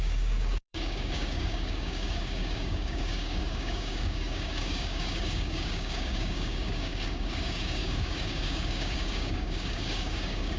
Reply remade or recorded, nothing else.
remade